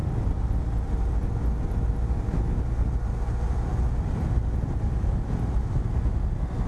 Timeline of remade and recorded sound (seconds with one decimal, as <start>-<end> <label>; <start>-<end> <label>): 0.0-6.7 recorded